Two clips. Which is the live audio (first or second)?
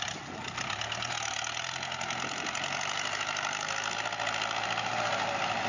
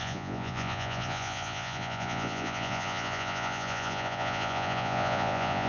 first